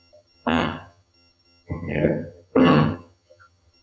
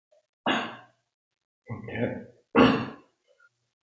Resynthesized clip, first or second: first